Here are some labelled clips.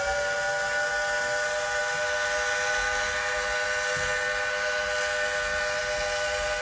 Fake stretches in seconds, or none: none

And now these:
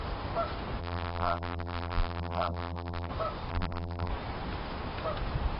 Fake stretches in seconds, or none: 0.8-3.1 (vocoder, BigVGAN v2); 3.5-4.1